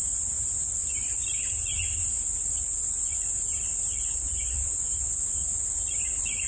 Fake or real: fake